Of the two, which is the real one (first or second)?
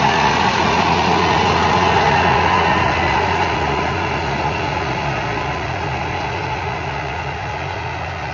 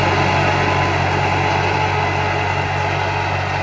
second